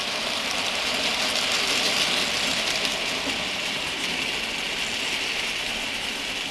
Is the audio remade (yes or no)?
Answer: no